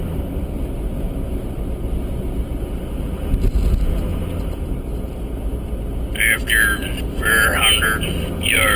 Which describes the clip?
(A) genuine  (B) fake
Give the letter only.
A